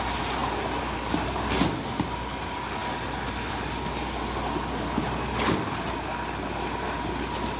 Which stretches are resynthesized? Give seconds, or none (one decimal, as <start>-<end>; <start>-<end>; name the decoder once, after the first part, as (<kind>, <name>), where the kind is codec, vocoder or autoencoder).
none